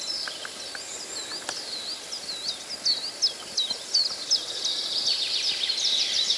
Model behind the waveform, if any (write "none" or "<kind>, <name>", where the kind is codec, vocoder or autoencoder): none